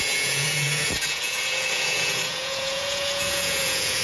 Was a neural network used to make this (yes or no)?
yes